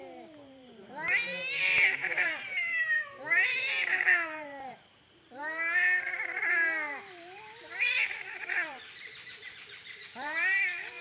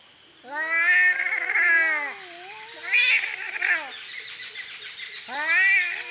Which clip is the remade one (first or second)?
first